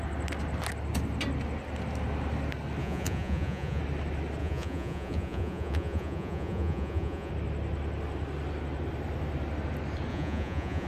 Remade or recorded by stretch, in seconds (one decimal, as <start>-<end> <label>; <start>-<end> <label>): 0.0-2.8 recorded; 2.8-3.8 remade; 3.8-4.4 recorded; 4.4-7.3 remade; 7.3-10.1 recorded; 10.1-10.9 remade